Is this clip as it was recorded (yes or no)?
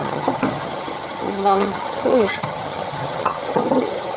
no